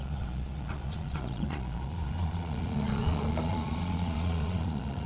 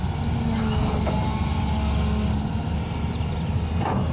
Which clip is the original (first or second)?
second